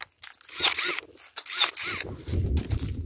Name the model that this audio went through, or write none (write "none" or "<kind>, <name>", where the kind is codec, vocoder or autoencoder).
none